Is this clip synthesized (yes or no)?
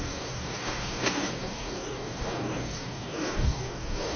yes